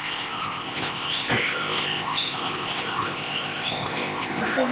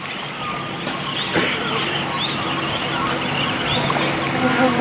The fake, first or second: first